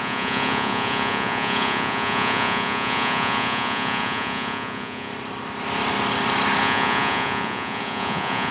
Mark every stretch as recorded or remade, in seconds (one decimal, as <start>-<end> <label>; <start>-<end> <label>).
0.0-5.1 remade; 5.1-6.6 recorded; 6.6-8.5 remade